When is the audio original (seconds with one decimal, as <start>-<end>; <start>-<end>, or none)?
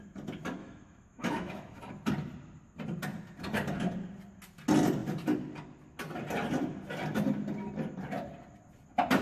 0.0-0.6; 1.8-9.2